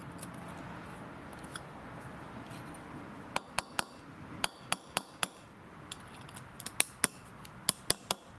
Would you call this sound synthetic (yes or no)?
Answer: no